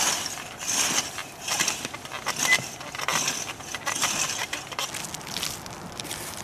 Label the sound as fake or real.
real